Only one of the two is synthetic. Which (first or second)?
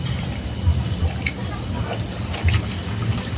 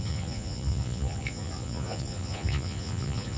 second